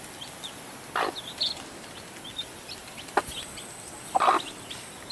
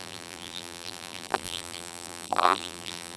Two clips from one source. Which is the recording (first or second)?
first